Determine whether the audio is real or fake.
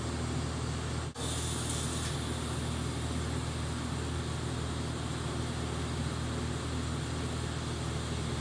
real